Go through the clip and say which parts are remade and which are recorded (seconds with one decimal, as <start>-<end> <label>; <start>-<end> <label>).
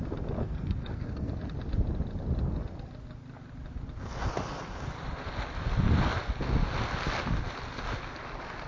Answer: 0.0-0.4 recorded; 0.4-1.3 remade; 1.3-8.7 recorded